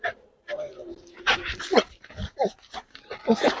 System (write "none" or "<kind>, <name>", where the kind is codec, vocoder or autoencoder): vocoder, BigVGAN v2